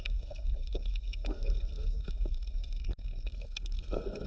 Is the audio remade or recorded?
remade